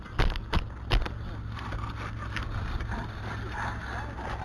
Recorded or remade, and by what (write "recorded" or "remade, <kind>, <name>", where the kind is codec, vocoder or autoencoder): recorded